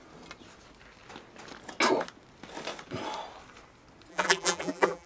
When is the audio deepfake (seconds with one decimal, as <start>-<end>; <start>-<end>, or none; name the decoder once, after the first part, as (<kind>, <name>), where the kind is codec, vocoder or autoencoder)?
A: 4.1-5.1 (vocoder, BigVGAN v2)